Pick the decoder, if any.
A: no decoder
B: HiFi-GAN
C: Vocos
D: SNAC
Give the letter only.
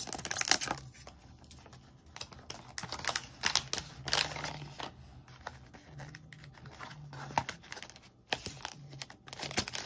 A